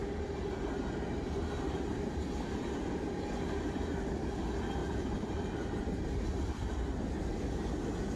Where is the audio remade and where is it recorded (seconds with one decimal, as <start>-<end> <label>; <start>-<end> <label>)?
0.0-4.8 recorded; 4.8-6.7 remade; 6.7-8.2 recorded